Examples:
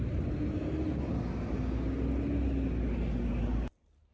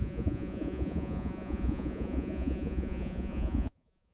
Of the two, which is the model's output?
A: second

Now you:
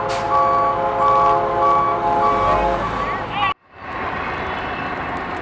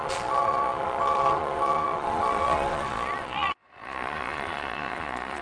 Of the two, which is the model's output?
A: second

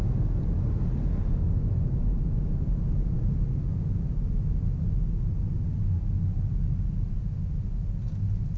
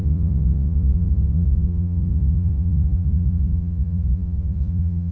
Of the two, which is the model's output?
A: second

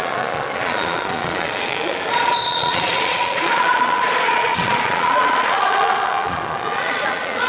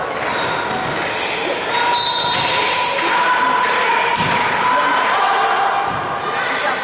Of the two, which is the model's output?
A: first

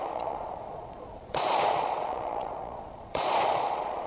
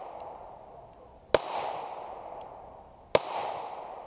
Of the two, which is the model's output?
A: first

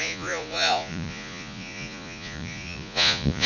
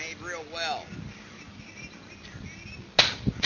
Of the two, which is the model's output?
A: first